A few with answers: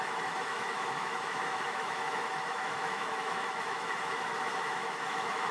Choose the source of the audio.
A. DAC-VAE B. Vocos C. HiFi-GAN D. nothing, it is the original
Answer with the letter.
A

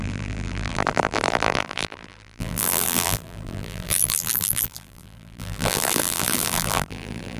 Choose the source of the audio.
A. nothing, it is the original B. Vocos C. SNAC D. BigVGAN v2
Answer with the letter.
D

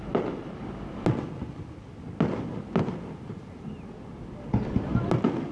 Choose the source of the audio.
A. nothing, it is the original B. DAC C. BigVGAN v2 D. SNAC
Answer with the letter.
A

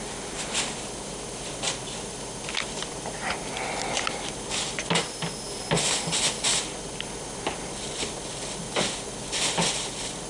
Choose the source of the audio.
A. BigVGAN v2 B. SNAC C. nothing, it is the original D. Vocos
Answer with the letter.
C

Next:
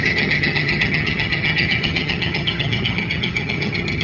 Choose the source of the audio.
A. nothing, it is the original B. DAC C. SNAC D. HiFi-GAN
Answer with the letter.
D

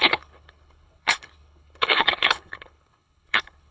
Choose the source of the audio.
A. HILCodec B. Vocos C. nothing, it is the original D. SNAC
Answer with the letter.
A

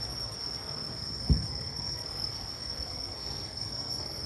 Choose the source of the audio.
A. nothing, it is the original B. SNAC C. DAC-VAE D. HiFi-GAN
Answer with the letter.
B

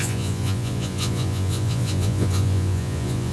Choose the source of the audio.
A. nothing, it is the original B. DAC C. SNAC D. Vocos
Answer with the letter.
D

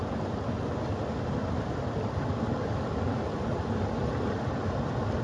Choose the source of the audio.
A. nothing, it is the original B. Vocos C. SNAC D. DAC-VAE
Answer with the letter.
A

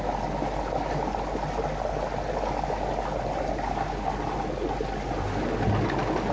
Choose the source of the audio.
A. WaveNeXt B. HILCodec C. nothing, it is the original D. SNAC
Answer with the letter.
C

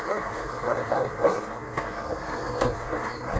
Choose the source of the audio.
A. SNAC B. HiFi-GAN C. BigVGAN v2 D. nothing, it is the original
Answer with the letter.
A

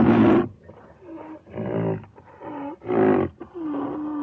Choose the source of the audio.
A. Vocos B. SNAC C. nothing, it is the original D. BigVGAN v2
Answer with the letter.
C